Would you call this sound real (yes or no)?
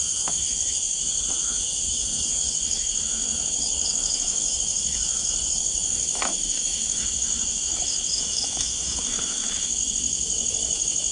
no